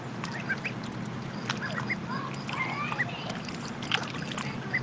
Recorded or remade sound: recorded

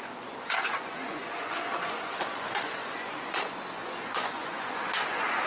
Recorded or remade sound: remade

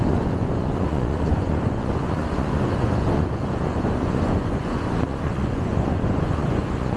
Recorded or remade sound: remade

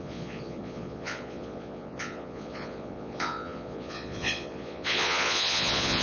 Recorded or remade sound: remade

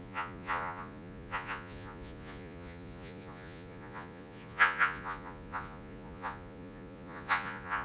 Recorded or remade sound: remade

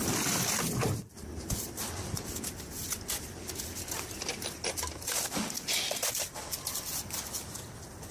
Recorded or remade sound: recorded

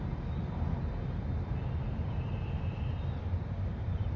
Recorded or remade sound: recorded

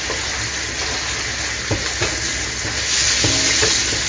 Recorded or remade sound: recorded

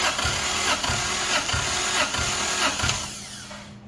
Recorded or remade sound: recorded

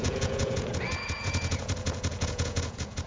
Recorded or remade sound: remade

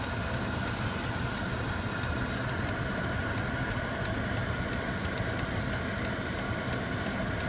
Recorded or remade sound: recorded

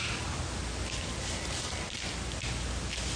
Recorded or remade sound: recorded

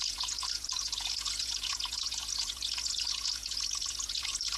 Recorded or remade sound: remade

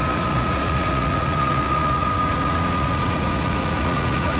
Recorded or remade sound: remade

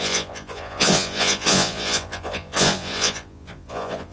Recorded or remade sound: remade